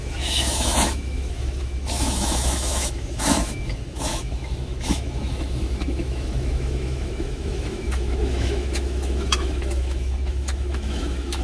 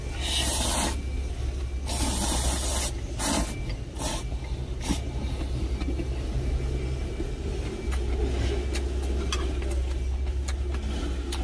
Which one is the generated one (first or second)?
first